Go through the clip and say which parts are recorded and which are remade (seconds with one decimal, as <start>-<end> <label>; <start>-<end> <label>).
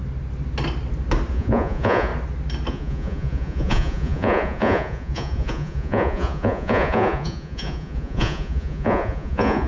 0.0-1.3 recorded; 1.3-2.1 remade; 2.1-2.7 recorded; 2.7-9.7 remade